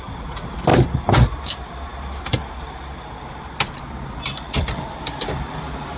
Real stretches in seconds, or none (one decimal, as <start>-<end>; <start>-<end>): 0.0-6.0